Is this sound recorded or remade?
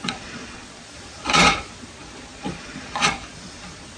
remade